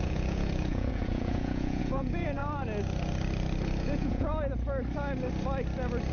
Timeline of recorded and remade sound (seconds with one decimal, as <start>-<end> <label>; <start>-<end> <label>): 0.0-2.4 remade; 2.4-3.8 recorded; 3.8-4.3 remade; 4.3-6.1 recorded